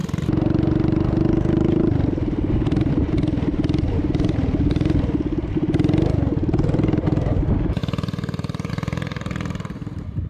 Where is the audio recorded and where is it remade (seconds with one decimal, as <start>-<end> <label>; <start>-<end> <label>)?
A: 0.0-10.3 recorded